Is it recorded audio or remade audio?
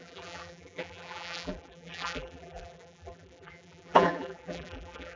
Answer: remade